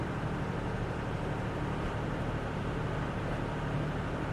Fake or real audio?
fake